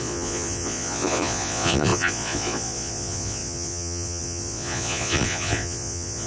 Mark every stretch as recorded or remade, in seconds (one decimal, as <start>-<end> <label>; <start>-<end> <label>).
0.0-6.3 remade